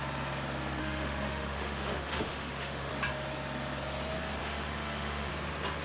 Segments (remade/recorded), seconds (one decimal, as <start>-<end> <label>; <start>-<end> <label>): 0.0-0.8 recorded; 0.8-2.9 remade; 2.9-4.4 recorded; 4.4-5.3 remade; 5.3-5.8 recorded

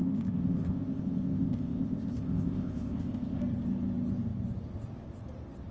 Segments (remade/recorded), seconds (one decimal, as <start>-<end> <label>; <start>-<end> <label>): 0.0-3.4 remade; 3.4-5.7 recorded

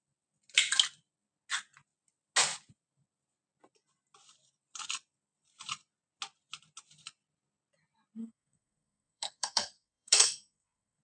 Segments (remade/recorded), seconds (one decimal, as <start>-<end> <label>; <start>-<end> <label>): 0.0-8.2 recorded; 8.2-11.0 remade

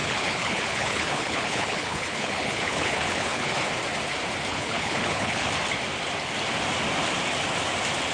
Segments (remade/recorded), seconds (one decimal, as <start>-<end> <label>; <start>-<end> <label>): 0.0-3.5 remade; 3.5-4.5 recorded; 4.5-5.5 remade; 5.5-8.1 recorded

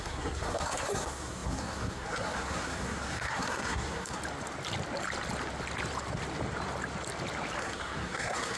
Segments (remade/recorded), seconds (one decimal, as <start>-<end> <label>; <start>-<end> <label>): 0.0-4.2 remade; 4.2-7.6 recorded; 7.6-8.6 remade

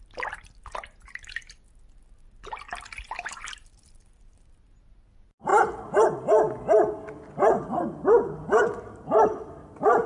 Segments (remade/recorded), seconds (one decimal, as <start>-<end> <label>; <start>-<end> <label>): 0.0-10.1 recorded

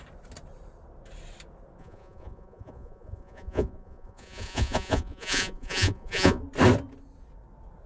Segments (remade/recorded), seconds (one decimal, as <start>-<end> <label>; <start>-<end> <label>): 0.0-1.8 recorded; 1.8-6.4 remade; 6.4-7.9 recorded